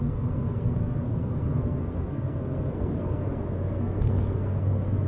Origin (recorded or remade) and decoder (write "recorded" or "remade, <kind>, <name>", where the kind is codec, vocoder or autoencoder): remade, codec, SNAC